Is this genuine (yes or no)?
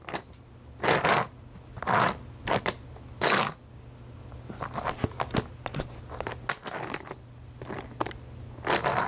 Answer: yes